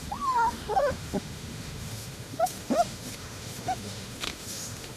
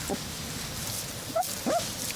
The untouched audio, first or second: second